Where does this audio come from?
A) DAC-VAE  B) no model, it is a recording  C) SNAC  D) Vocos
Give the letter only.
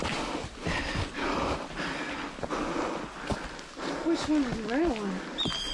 B